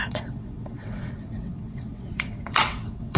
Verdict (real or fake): fake